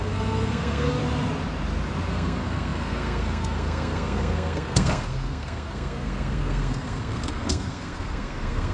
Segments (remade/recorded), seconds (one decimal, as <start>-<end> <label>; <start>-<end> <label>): 0.0-1.0 remade; 1.0-2.1 recorded; 2.1-8.7 remade